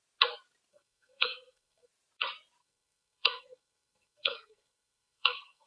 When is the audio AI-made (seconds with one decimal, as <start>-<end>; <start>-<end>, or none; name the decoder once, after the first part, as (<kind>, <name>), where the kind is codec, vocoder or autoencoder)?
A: 0.7-1.9 (codec, SNAC); 2.6-5.7

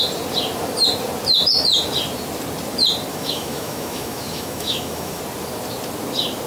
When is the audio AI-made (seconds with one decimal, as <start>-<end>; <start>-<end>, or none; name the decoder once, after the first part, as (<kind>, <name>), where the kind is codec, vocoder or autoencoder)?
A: 3.1-5.2 (autoencoder, DAC-VAE)